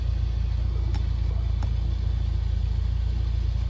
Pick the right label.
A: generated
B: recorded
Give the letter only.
B